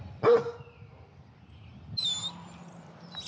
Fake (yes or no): no